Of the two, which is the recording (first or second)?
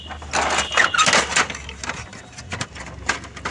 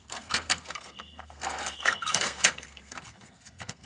first